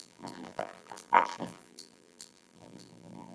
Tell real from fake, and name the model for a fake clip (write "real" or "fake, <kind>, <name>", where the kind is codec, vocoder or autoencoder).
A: fake, vocoder, BigVGAN v2